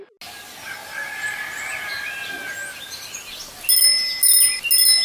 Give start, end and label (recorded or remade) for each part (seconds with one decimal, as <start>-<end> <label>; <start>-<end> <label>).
0.0-5.0 recorded